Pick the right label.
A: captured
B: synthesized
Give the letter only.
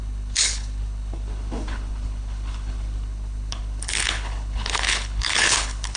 B